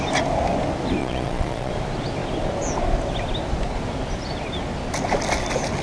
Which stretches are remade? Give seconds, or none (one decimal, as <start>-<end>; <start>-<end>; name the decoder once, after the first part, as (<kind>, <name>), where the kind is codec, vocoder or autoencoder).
1.0-1.7 (vocoder, Vocos)